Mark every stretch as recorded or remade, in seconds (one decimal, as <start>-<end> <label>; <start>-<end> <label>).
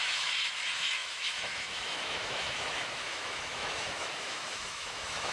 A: 0.0-5.3 remade